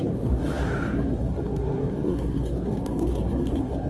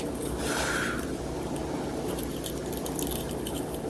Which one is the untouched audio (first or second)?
second